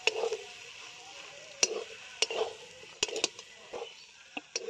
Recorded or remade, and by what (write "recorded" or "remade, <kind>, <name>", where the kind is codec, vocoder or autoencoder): recorded